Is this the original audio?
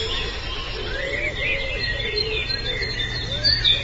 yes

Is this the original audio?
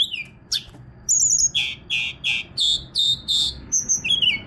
yes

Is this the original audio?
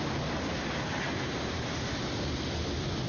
yes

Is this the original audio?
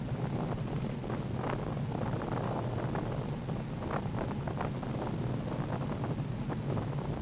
yes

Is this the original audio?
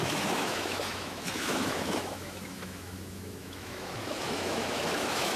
no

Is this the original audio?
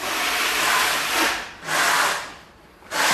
yes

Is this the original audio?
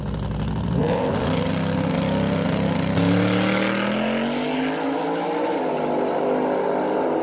yes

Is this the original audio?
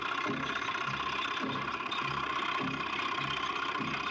yes